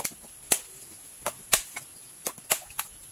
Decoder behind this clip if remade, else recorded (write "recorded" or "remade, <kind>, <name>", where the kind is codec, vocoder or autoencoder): recorded